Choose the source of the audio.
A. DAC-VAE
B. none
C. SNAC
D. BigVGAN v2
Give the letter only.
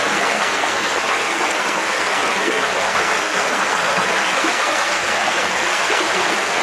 C